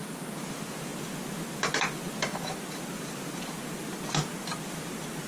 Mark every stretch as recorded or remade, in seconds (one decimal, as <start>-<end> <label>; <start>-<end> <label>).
0.0-5.3 recorded